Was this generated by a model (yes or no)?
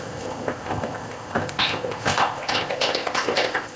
yes